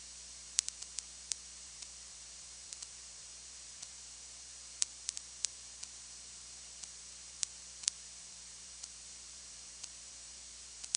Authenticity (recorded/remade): remade